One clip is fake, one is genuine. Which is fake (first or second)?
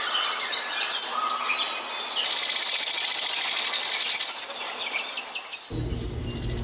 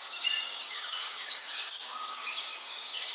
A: second